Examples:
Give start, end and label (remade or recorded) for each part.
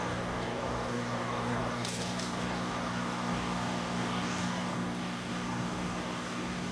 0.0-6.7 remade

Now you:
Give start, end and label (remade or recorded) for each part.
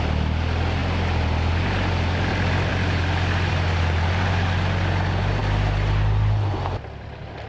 0.0-7.5 recorded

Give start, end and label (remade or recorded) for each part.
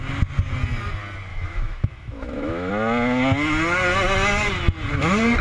0.0-1.3 recorded; 1.3-2.7 remade; 2.7-5.4 recorded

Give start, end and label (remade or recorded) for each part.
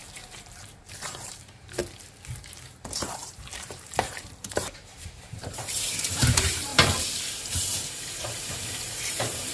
0.0-1.8 remade; 1.8-2.4 recorded; 2.4-9.5 remade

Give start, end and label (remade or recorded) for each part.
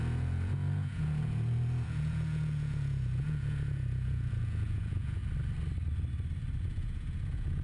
0.0-5.2 remade; 5.2-6.6 recorded; 6.6-7.6 remade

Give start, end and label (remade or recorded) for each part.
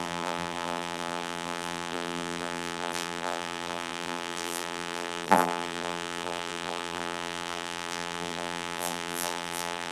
0.0-9.9 remade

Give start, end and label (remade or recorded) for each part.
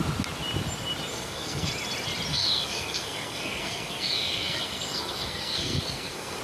0.0-1.1 recorded; 1.1-1.7 remade; 1.7-2.3 recorded; 2.3-6.4 remade